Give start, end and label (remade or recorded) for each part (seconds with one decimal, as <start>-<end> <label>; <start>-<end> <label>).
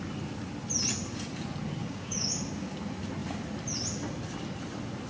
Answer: 0.0-1.8 recorded; 1.8-2.4 remade; 2.4-5.1 recorded